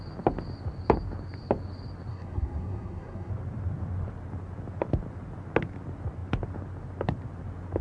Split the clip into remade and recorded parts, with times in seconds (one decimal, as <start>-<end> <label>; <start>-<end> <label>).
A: 0.0-2.1 recorded; 2.1-3.3 remade; 3.3-7.8 recorded

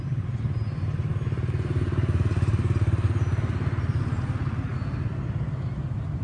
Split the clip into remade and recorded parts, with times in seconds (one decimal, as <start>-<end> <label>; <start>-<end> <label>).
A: 0.0-6.2 recorded